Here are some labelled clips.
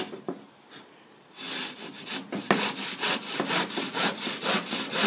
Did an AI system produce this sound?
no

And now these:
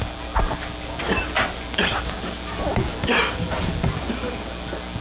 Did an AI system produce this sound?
no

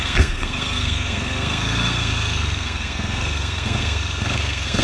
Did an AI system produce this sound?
yes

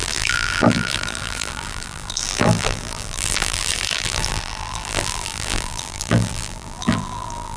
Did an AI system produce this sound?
yes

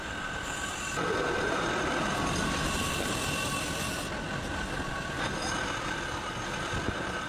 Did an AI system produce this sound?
no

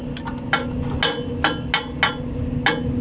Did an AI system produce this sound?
no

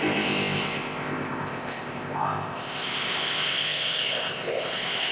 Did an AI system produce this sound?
yes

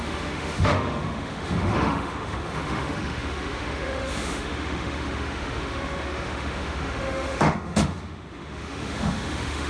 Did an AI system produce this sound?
yes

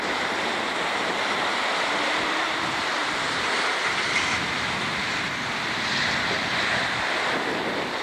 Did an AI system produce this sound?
yes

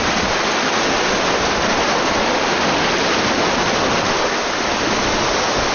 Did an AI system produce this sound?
no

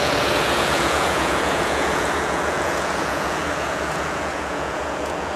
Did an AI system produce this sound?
yes